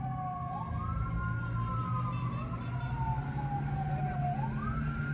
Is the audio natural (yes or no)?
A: yes